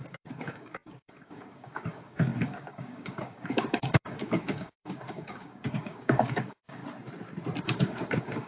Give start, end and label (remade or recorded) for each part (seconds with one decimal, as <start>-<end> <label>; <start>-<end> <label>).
0.0-6.8 remade; 6.8-7.6 recorded; 7.6-8.5 remade